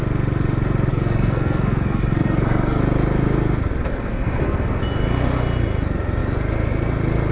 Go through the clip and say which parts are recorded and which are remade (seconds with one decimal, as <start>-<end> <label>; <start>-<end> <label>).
0.0-0.9 recorded; 0.9-2.8 remade; 2.8-3.9 recorded; 3.9-4.8 remade; 4.8-7.3 recorded

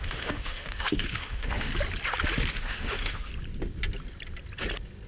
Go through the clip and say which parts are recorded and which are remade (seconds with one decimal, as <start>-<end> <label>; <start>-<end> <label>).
0.0-1.7 remade; 1.7-2.5 recorded; 2.5-3.3 remade; 3.3-5.1 recorded